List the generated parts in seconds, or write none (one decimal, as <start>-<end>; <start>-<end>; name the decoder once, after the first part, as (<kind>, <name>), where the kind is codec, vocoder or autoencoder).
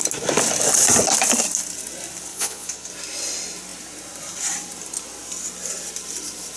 2.3-2.9 (vocoder, Vocos)